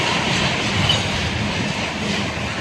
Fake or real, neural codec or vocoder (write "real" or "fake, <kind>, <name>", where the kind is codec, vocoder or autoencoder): real